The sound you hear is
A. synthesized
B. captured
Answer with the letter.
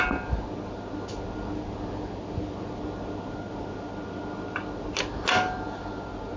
B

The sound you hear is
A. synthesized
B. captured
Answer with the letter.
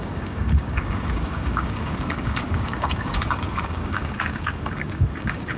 A